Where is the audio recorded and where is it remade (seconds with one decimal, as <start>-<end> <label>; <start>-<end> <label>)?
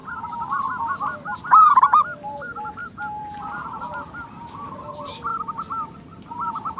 0.0-2.4 recorded; 2.4-5.3 remade; 5.3-6.2 recorded; 6.2-6.8 remade